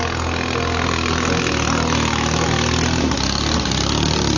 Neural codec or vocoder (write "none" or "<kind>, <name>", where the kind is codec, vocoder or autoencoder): none